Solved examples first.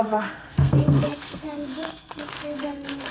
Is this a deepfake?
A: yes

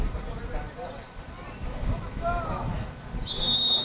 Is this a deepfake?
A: no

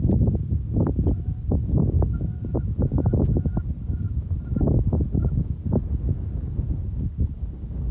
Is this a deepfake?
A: no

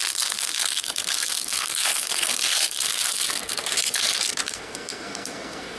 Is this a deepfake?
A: yes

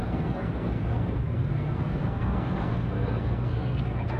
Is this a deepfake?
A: yes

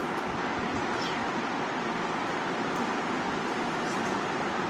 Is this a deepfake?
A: no